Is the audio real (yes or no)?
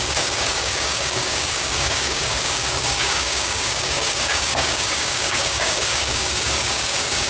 no